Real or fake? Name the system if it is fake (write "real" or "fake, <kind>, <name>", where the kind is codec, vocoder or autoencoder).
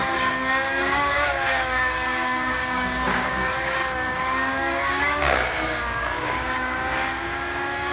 fake, codec, DAC